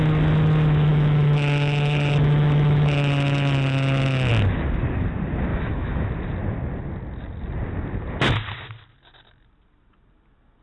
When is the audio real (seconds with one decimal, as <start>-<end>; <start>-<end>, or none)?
0.0-0.9; 4.3-5.5; 6.1-10.6

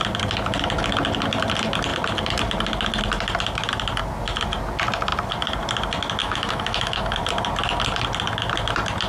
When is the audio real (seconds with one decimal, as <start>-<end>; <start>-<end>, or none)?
0.0-6.2; 7.2-9.1

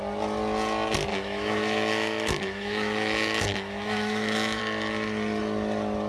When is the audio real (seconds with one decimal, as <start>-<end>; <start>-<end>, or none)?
0.0-1.1; 4.6-6.1

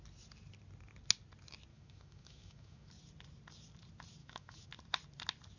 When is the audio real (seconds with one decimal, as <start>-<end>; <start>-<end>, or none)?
0.0-1.7; 2.9-4.2; 4.7-5.6

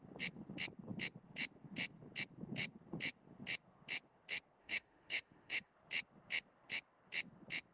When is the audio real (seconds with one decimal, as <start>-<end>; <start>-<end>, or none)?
0.0-4.6; 5.7-7.7

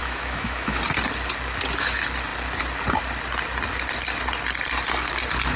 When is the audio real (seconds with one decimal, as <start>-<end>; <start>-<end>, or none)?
0.8-5.6